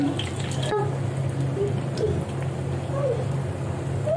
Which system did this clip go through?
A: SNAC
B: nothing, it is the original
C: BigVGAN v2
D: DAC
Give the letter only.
B